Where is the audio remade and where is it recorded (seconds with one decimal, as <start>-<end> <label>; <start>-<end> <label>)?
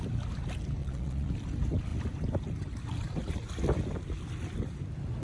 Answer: 0.0-0.8 recorded; 0.8-1.3 remade; 1.3-5.2 recorded